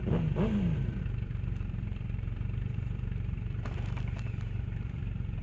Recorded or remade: remade